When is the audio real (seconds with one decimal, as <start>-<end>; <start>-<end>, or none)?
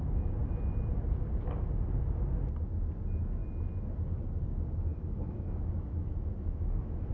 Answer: 0.0-4.9